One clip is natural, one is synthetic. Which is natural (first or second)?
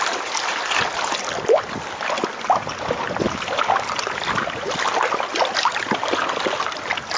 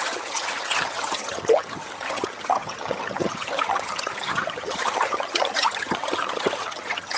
first